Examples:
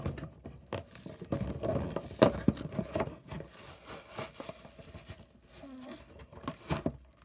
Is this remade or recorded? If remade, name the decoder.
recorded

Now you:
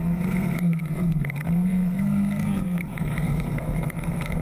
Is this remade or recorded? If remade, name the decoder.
remade, codec, SNAC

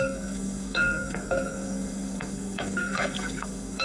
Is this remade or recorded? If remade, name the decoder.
remade, codec, SNAC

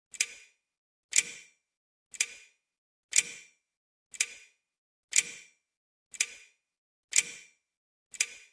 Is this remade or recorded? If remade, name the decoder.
recorded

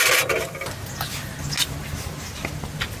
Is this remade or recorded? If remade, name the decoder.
recorded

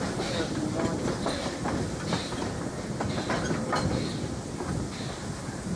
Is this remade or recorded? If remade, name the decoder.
recorded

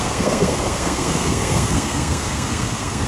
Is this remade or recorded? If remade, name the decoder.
remade, codec, SNAC